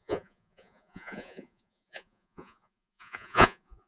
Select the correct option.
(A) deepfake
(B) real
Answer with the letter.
A